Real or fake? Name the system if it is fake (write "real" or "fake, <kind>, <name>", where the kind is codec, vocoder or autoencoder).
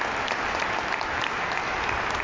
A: real